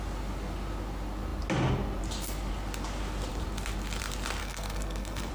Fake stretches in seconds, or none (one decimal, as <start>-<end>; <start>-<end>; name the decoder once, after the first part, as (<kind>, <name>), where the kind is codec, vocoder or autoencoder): 4.4-5.3 (codec, SNAC)